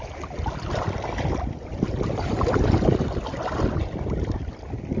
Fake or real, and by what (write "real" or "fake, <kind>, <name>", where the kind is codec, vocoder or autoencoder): real